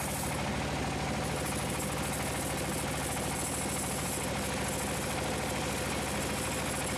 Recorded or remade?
recorded